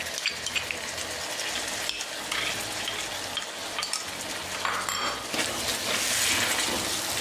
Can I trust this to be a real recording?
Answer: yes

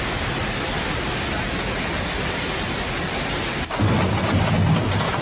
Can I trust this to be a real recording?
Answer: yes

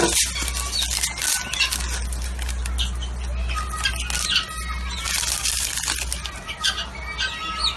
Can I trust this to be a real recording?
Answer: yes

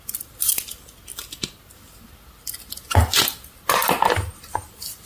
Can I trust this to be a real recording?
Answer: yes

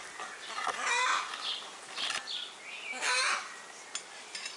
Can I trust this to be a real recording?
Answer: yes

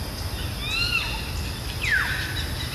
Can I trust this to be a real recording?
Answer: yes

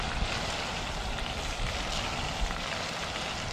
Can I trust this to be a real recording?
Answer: yes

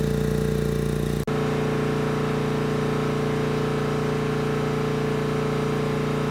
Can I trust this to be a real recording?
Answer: yes